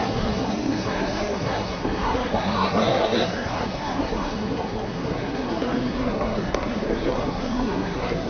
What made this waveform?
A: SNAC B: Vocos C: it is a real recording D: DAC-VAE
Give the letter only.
A